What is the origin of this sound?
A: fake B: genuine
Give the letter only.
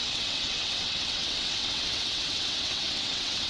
A